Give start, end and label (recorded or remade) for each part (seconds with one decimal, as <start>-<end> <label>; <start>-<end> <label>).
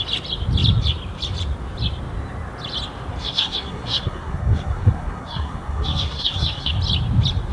0.0-3.2 recorded; 3.2-6.8 remade; 6.8-7.5 recorded